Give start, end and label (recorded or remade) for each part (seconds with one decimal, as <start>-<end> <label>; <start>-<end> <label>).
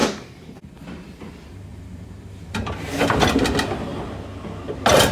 0.0-0.8 remade; 0.8-1.7 recorded; 1.7-3.3 remade; 3.3-5.1 recorded